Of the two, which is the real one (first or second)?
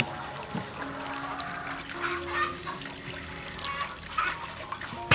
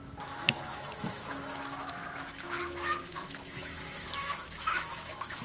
first